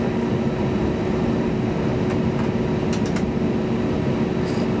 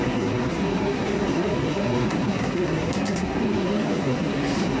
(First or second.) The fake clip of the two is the second